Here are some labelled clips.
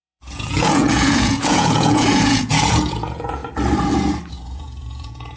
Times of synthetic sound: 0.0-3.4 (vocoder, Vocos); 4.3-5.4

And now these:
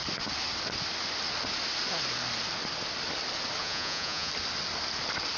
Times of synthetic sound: 3.6-4.3 (vocoder, Vocos)

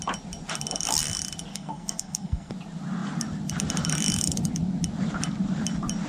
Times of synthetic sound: 1.5-2.5 (codec, SNAC)